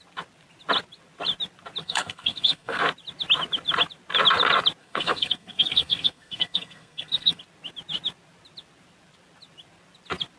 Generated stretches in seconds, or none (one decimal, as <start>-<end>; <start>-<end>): 1.8-2.8; 4.8-7.4